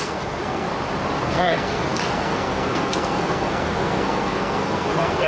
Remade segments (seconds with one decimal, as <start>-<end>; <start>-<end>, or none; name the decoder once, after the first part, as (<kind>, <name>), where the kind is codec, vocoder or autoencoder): 0.0-0.7 (codec, SNAC); 1.2-5.3